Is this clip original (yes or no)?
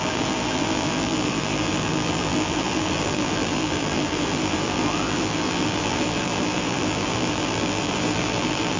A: no